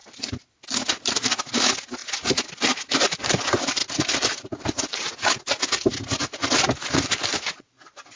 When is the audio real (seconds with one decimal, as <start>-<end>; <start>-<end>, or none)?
0.5-3.8; 5.1-8.2